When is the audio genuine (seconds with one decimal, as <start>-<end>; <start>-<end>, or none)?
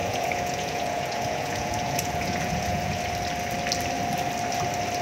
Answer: 3.0-5.0